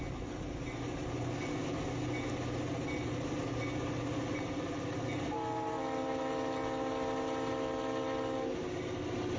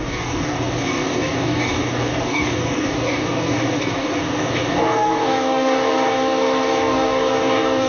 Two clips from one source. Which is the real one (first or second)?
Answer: first